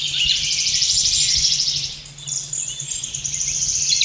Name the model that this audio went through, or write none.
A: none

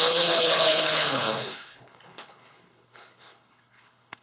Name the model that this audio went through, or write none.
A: codec, HILCodec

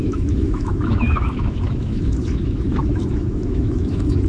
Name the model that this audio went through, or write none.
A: autoencoder, DAC-VAE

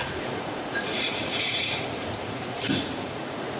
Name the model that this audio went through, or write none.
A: vocoder, Vocos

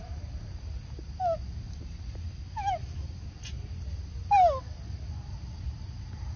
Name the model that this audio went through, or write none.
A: none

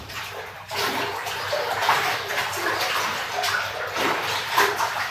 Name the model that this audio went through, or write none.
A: vocoder, BigVGAN v2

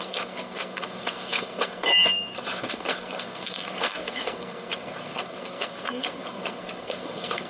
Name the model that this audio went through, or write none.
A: codec, SNAC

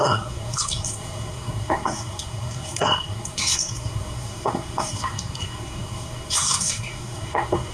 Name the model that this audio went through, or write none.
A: codec, SNAC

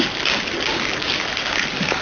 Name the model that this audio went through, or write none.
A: none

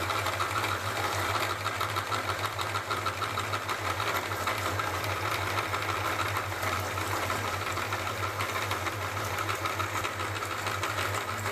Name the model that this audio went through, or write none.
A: none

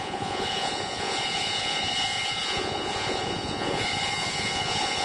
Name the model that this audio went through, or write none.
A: vocoder, Vocos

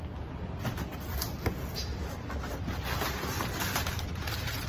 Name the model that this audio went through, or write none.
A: none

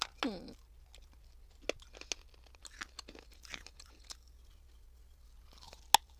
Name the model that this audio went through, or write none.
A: none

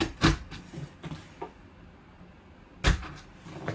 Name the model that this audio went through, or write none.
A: none